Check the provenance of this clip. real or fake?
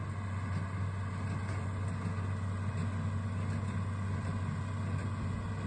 real